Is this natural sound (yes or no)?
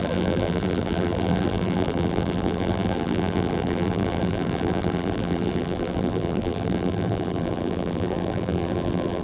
no